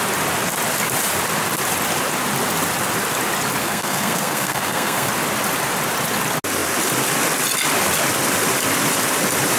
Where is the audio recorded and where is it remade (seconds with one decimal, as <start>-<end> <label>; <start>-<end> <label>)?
0.0-3.6 recorded; 3.6-5.1 remade; 5.1-9.6 recorded

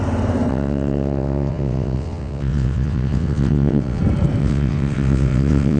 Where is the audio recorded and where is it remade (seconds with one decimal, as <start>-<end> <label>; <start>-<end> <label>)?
0.0-0.5 recorded; 0.5-4.0 remade; 4.0-4.4 recorded; 4.4-5.8 remade